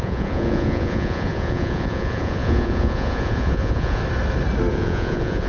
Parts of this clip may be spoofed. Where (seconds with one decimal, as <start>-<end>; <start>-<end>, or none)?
0.0-4.0; 4.7-5.5